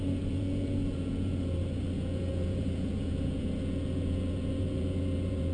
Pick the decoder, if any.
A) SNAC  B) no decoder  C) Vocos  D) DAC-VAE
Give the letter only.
C